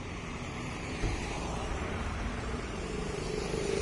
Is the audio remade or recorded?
remade